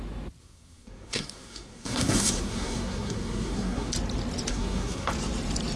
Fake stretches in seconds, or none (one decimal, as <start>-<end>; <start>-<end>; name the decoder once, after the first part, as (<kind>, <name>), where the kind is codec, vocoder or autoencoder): 0.4-3.9 (codec, SNAC); 4.5-5.1